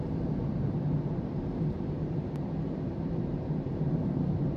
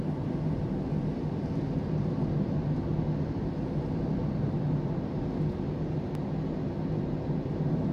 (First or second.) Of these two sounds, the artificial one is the first